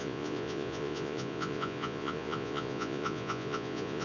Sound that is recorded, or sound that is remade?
remade